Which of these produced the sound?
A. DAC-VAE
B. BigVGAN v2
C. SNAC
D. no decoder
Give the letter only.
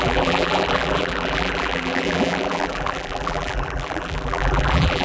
B